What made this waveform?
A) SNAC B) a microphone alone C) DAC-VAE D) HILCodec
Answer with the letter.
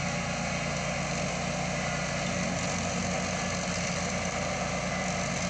B